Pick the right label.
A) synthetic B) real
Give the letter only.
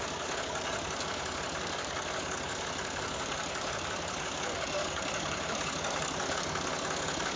A